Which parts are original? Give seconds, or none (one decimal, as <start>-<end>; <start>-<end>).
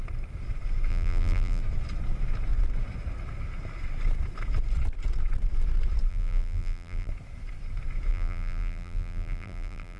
0.0-0.9; 1.6-6.1; 7.1-8.1